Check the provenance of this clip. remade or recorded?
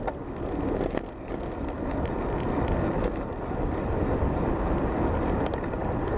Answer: recorded